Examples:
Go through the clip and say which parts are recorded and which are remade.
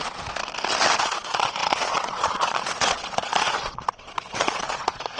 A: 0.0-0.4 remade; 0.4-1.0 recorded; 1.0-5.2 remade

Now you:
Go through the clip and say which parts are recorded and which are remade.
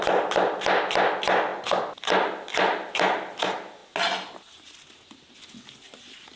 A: 0.0-6.4 recorded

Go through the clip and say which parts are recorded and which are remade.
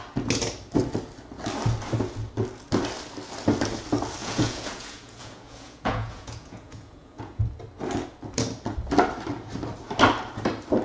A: 0.0-4.2 recorded; 4.2-7.4 remade; 7.4-10.8 recorded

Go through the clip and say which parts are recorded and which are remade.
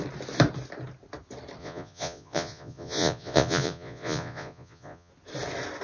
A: 0.0-1.6 recorded; 1.6-5.1 remade; 5.1-5.8 recorded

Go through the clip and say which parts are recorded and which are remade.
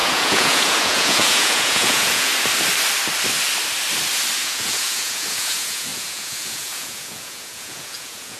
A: 0.0-2.3 remade; 2.3-4.4 recorded; 4.4-8.4 remade